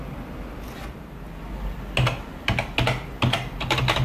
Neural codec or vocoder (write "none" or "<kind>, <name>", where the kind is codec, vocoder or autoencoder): none